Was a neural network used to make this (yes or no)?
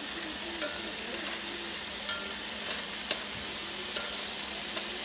no